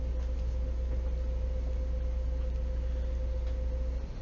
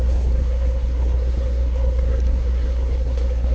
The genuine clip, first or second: first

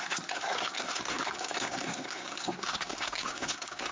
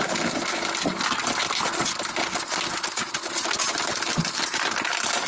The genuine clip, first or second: second